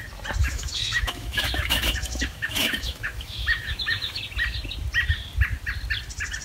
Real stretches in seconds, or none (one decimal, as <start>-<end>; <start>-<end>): 0.0-0.4; 4.2-6.4